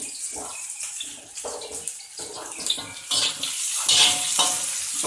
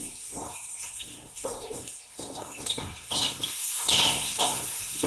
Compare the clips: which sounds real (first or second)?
first